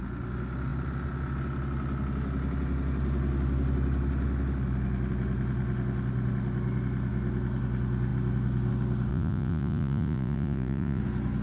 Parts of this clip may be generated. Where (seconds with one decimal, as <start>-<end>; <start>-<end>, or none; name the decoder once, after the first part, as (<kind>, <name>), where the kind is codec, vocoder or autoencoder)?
9.1-11.0 (vocoder, Vocos)